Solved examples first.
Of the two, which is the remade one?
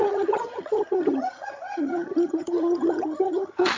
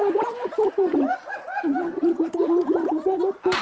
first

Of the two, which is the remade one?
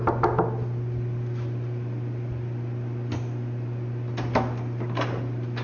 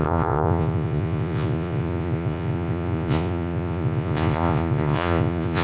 second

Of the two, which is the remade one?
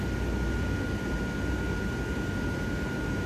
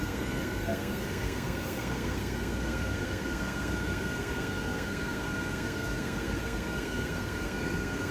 second